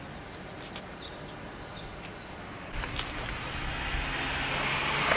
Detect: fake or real real